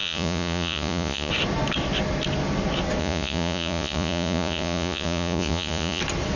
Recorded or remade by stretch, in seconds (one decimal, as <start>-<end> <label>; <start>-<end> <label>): 0.0-1.3 remade; 1.3-3.0 recorded; 3.0-6.0 remade; 6.0-6.4 recorded

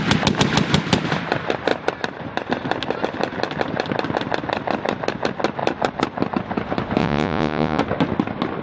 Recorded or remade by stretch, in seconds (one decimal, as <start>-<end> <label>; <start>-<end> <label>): 0.0-7.0 recorded; 7.0-7.8 remade; 7.8-8.6 recorded

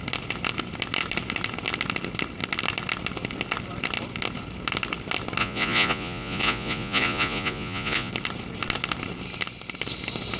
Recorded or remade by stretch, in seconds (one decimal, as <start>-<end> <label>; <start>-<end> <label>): 0.0-5.4 recorded; 5.4-8.1 remade; 8.1-10.4 recorded

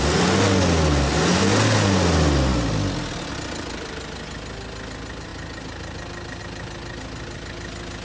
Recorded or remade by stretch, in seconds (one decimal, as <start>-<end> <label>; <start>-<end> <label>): 0.0-8.0 recorded

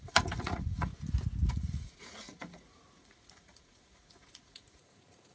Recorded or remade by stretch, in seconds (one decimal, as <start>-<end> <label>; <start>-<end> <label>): 0.0-0.9 remade; 0.9-1.5 recorded; 1.5-5.3 remade

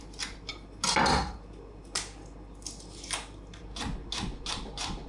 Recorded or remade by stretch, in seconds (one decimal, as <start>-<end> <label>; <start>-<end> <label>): 0.0-5.1 recorded